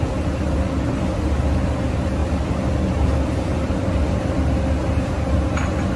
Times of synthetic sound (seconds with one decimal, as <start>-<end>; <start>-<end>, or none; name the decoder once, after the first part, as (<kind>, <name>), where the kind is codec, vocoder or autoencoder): none